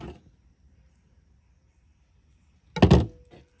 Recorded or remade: recorded